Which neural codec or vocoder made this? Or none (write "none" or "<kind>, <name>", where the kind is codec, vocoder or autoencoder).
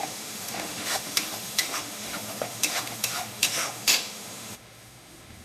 autoencoder, DAC-VAE